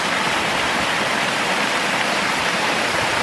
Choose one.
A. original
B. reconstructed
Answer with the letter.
B